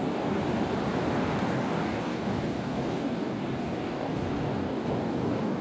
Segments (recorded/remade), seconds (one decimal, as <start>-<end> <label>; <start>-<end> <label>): 0.0-0.4 remade; 0.4-1.3 recorded; 1.3-5.6 remade